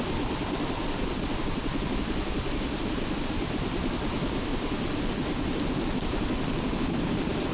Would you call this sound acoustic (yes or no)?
yes